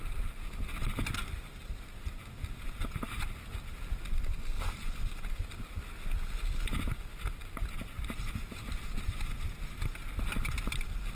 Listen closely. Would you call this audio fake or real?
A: real